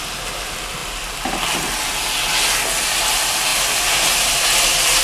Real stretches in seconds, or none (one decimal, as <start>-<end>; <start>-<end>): 0.0-5.0